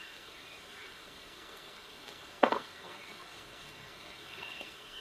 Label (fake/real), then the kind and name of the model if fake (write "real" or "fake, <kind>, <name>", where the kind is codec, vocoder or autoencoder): fake, codec, SNAC